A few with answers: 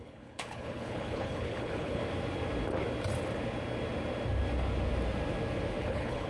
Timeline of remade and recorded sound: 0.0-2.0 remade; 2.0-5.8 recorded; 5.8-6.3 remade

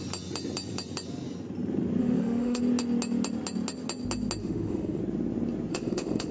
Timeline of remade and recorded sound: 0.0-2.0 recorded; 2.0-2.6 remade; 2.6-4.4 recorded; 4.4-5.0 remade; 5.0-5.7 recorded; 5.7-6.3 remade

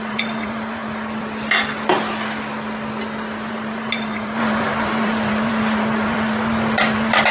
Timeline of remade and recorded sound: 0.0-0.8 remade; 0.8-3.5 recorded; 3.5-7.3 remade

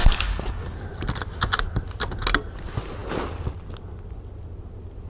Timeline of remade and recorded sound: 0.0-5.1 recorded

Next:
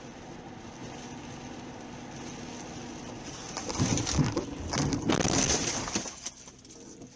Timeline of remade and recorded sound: 0.0-7.2 recorded

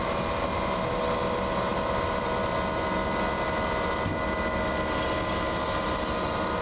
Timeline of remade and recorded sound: 0.0-1.7 recorded; 1.7-2.3 remade; 2.3-6.6 recorded